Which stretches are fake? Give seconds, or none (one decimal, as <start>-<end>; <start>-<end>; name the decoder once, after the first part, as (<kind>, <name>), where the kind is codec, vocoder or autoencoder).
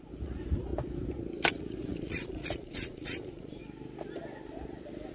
0.0-0.7 (vocoder, Vocos); 1.5-3.6